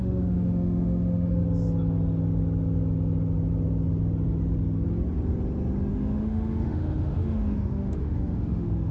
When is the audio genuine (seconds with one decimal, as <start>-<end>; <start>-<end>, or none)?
1.4-5.9